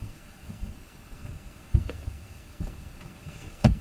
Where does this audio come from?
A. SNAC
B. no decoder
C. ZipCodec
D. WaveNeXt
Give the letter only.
A